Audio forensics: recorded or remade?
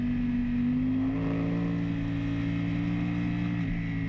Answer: recorded